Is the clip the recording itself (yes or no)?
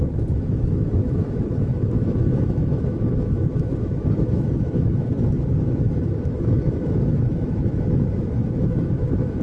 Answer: no